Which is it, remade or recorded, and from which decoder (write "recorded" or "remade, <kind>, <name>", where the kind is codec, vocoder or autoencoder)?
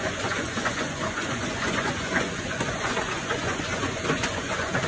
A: remade, vocoder, Vocos